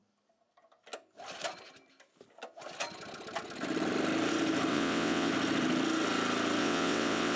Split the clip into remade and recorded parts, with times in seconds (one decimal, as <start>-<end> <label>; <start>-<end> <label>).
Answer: 0.0-4.7 recorded; 4.7-5.3 remade; 5.3-6.6 recorded; 6.6-7.4 remade